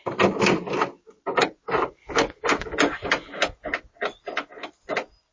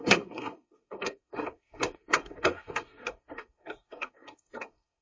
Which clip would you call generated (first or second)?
second